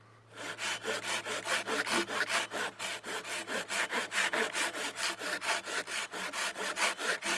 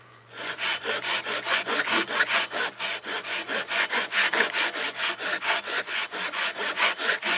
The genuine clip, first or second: first